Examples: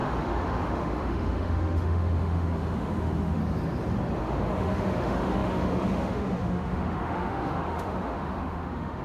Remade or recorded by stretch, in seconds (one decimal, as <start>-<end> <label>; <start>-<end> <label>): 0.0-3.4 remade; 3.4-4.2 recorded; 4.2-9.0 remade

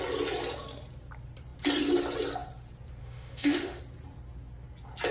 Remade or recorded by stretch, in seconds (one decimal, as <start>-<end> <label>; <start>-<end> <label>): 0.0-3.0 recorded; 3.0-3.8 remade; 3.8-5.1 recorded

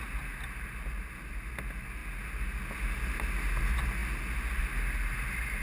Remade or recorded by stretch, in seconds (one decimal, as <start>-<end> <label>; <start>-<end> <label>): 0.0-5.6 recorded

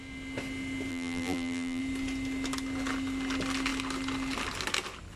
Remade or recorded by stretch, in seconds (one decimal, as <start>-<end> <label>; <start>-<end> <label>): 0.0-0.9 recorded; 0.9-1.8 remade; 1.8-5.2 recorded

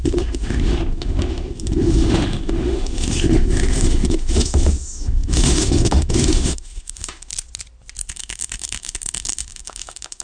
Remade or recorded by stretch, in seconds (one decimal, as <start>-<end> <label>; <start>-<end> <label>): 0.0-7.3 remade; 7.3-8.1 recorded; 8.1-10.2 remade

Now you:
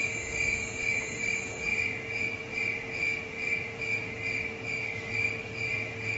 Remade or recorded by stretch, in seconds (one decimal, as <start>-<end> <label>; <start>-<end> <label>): 0.0-4.9 remade; 4.9-5.4 recorded; 5.4-6.2 remade

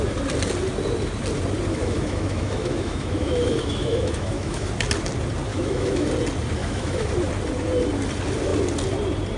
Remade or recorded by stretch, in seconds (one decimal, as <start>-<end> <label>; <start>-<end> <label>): 0.0-1.7 recorded; 1.7-4.7 remade; 4.7-5.5 recorded; 5.5-6.1 remade; 6.1-6.6 recorded; 6.6-7.1 remade; 7.1-9.4 recorded

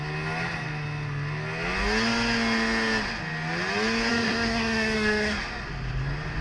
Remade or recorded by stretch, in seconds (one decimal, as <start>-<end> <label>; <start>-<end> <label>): 0.0-4.1 recorded; 4.1-5.4 remade; 5.4-6.4 recorded